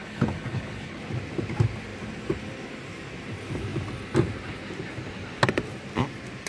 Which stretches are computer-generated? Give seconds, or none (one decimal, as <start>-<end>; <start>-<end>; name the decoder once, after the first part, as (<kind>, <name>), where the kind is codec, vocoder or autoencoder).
0.0-1.0 (codec, HILCodec)